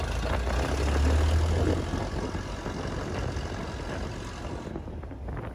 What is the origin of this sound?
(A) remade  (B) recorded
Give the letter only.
B